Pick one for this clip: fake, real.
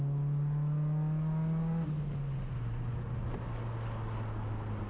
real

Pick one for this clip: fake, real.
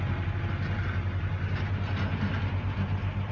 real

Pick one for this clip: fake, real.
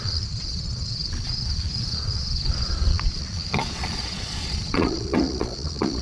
fake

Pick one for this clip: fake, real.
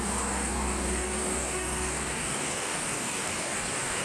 fake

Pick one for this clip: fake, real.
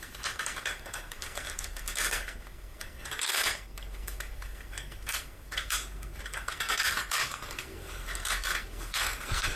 fake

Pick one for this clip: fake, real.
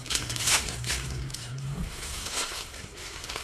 fake